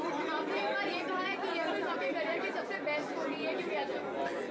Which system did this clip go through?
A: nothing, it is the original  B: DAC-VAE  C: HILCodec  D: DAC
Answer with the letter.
A